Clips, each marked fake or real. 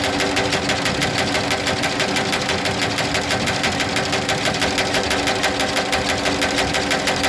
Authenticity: real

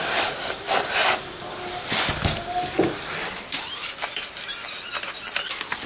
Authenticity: real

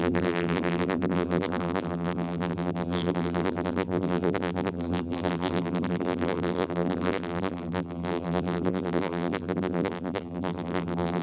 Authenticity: fake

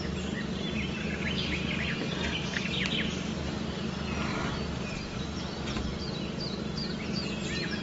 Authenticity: real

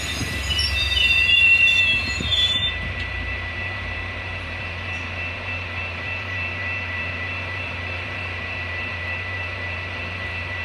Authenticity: fake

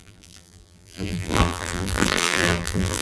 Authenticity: fake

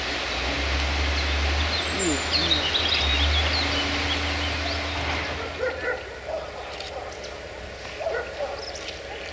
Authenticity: real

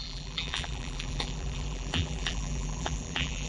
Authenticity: fake